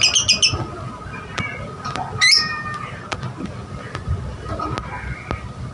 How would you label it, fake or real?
real